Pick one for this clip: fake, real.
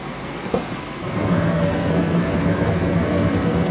fake